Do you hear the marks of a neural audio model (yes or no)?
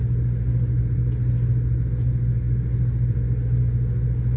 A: no